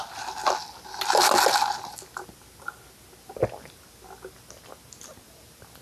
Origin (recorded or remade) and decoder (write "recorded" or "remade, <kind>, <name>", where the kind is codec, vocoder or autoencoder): recorded